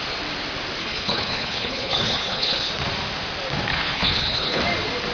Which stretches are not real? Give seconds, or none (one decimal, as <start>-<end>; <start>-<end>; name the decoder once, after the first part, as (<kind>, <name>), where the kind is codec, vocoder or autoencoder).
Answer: 0.8-2.7 (codec, HILCodec); 3.7-4.6